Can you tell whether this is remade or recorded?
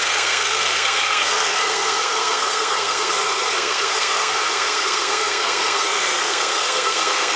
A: remade